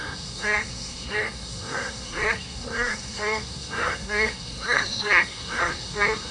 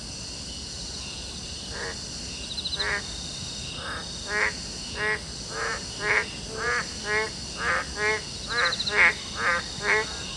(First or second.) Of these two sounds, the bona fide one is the second